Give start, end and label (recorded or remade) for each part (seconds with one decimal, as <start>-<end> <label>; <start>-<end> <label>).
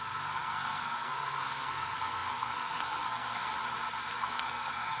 0.0-3.5 remade; 3.5-4.1 recorded; 4.1-5.0 remade